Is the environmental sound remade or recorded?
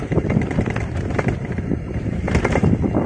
recorded